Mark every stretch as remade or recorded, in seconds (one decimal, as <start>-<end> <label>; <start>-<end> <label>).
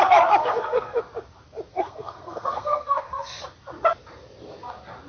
0.0-0.4 recorded; 0.4-1.0 remade; 1.0-1.7 recorded; 1.7-3.4 remade; 3.4-5.1 recorded